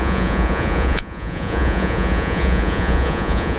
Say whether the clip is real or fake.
fake